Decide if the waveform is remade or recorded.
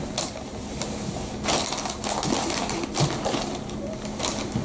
recorded